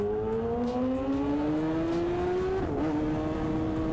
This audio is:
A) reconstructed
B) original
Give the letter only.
B